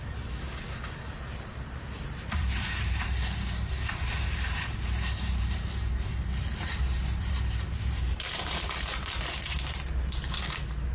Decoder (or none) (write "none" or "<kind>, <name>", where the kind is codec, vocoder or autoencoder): vocoder, BigVGAN v2